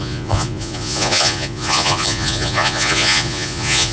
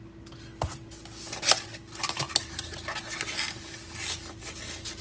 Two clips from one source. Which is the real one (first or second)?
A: second